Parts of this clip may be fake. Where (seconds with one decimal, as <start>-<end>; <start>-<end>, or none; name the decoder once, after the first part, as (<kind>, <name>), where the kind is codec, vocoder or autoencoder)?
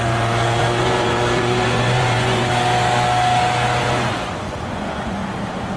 0.0-2.5 (vocoder, Vocos); 3.8-5.2